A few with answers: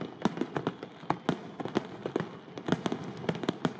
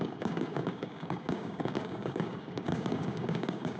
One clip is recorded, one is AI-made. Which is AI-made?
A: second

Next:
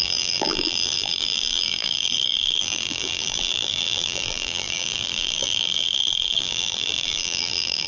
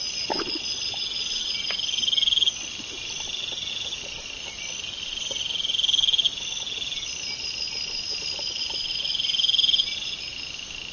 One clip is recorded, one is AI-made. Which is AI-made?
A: first